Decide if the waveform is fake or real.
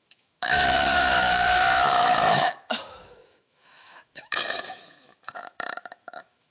fake